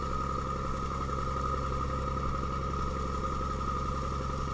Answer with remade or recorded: recorded